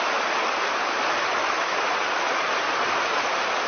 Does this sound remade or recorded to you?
recorded